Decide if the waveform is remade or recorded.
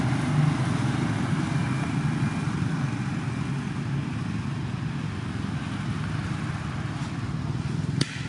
recorded